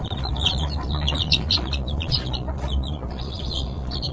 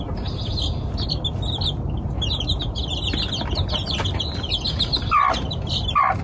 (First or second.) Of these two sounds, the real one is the second